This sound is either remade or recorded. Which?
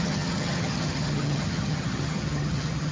remade